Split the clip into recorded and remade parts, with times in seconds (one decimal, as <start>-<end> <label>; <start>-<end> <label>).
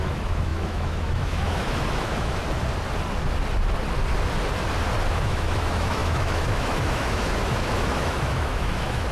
0.0-2.4 remade; 2.4-5.1 recorded; 5.1-9.1 remade